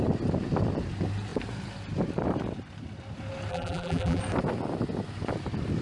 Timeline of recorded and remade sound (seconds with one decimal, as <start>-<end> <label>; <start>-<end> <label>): 0.0-3.5 recorded; 3.5-4.2 remade; 4.2-5.8 recorded